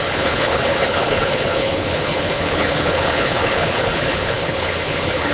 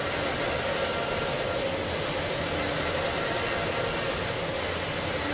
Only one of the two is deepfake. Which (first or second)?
first